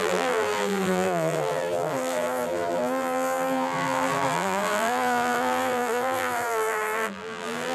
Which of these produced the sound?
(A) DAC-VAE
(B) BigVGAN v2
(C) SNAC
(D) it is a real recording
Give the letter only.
B